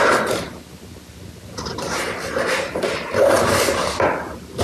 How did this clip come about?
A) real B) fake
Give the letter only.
A